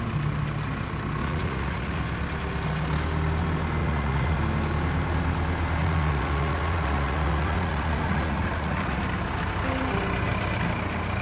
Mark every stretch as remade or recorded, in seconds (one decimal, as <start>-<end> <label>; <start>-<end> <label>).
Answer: 0.0-1.2 recorded; 1.2-2.0 remade; 2.0-3.8 recorded; 3.8-4.4 remade; 4.4-5.8 recorded; 5.8-9.0 remade; 9.0-11.2 recorded